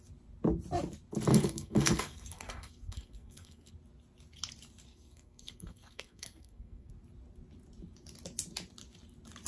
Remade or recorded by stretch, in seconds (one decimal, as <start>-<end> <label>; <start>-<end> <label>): 0.0-1.3 recorded; 1.3-3.7 remade; 3.7-4.9 recorded; 4.9-6.9 remade; 6.9-9.5 recorded